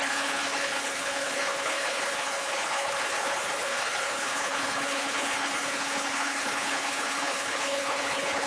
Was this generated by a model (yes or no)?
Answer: yes